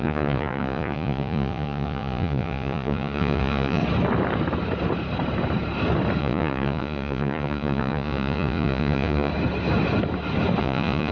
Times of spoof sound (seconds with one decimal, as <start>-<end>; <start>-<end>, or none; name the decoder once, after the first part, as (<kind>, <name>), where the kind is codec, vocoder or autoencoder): 0.0-3.8 (vocoder, Vocos); 6.2-9.3; 10.6-11.1